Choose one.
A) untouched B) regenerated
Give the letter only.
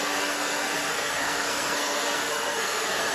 B